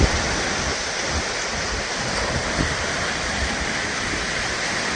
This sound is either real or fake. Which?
fake